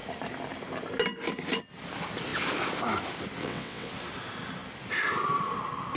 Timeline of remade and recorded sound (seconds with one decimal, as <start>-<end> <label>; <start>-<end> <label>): 0.0-3.4 recorded; 3.4-3.9 remade; 3.9-6.0 recorded